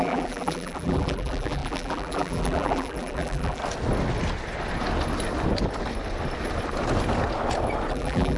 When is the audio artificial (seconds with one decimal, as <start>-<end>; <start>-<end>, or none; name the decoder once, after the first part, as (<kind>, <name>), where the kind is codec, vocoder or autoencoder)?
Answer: 0.0-3.6 (vocoder, BigVGAN v2); 7.9-8.4